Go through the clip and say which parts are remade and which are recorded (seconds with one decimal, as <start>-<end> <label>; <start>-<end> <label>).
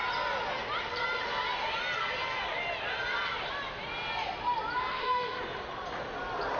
0.0-4.9 recorded; 4.9-5.4 remade; 5.4-6.6 recorded